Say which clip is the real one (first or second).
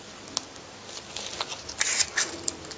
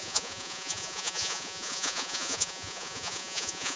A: first